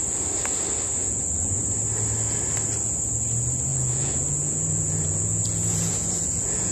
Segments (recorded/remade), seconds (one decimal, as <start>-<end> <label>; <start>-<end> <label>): 0.0-1.0 recorded; 1.0-1.6 remade; 1.6-3.7 recorded; 3.7-6.7 remade